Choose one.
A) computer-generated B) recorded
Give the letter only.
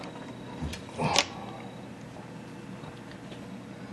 B